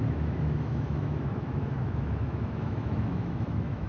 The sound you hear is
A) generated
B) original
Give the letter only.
A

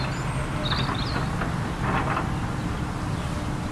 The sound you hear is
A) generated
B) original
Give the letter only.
B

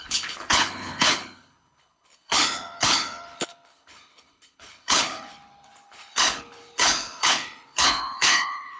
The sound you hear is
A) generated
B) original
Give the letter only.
A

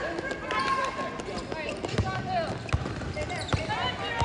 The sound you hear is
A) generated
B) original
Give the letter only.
B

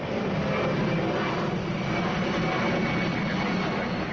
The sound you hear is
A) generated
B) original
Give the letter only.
B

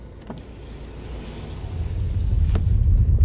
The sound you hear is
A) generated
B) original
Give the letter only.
B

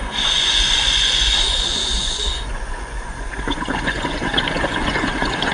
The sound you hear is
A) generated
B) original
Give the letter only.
A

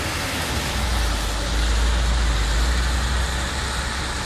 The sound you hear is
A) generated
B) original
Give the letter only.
B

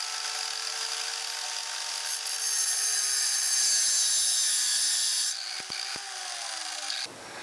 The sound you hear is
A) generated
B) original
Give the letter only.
B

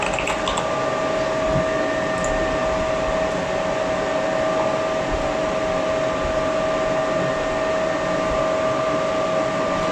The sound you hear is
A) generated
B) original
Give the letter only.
B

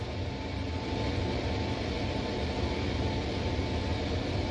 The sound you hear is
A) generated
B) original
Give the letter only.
B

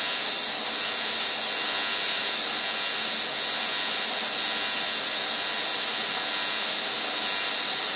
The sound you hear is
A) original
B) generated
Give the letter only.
A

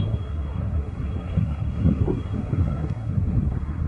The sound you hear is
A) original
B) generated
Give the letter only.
B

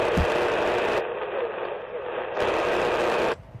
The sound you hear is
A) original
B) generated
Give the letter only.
A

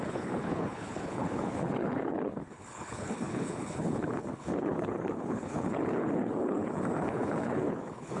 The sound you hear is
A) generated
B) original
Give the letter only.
A